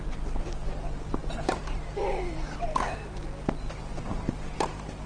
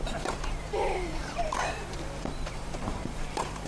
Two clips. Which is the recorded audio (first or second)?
first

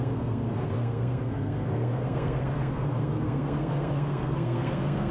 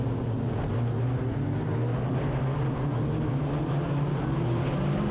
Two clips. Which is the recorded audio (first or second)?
second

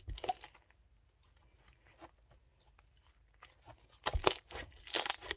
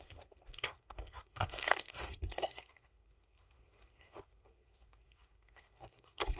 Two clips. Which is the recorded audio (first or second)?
first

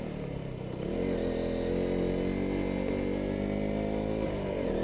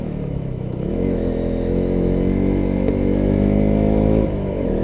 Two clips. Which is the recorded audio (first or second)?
first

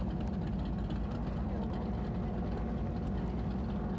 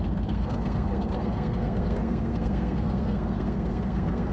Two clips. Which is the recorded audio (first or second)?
first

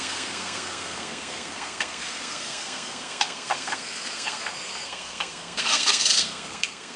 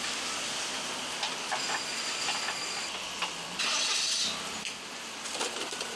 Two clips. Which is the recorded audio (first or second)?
second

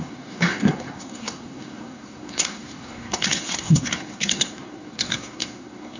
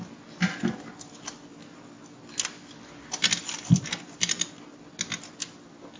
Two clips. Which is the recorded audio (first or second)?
second